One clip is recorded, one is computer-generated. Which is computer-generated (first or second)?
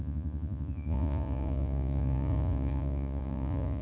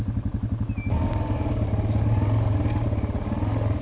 first